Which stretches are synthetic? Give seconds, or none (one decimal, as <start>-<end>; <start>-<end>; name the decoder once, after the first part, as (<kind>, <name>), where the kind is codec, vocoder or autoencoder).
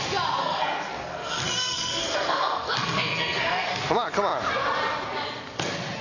0.4-3.8 (codec, SNAC)